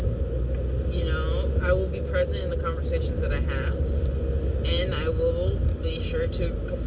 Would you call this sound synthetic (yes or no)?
no